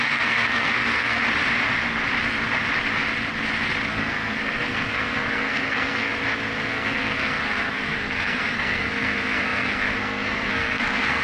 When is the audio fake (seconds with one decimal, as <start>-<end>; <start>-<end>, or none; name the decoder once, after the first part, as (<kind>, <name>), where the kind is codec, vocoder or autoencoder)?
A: 0.0-1.2 (codec, SNAC); 3.9-6.1; 6.7-11.2